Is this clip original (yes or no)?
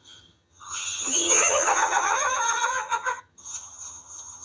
no